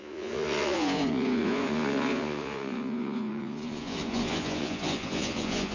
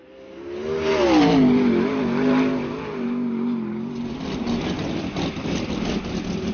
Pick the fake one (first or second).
first